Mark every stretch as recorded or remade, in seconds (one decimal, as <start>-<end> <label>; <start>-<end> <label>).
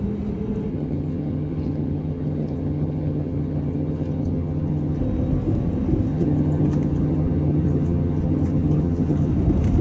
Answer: 0.0-0.7 recorded; 0.7-5.0 remade; 5.0-6.1 recorded; 6.1-9.3 remade; 9.3-9.8 recorded